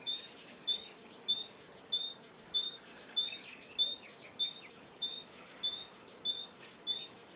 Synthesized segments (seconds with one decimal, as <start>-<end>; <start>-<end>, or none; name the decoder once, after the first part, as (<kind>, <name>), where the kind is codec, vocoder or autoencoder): 0.0-7.4 (codec, DAC)